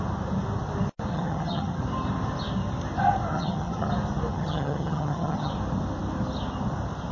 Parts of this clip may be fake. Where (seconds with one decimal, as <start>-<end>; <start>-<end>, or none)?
1.1-1.8; 3.3-3.9; 4.3-5.5